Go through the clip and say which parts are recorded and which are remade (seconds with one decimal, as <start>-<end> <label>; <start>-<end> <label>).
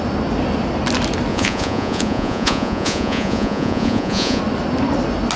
0.0-1.3 recorded; 1.3-4.4 remade; 4.4-5.4 recorded